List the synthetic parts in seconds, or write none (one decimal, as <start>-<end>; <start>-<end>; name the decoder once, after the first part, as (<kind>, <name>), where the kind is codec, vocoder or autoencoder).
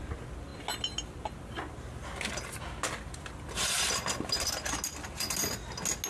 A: none